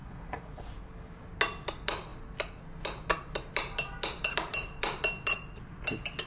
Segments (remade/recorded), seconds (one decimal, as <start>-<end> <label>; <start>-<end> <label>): 0.0-0.6 remade; 0.6-6.3 recorded